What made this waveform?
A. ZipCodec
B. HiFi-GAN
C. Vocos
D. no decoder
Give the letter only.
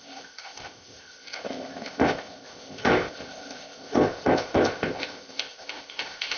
A